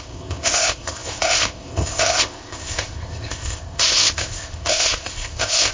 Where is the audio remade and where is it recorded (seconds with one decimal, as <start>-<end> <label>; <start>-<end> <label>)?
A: 0.0-5.7 remade